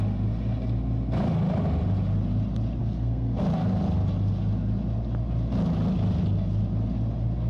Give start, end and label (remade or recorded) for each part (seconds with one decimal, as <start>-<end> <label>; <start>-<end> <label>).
0.0-2.8 recorded; 2.8-3.4 remade; 3.4-7.5 recorded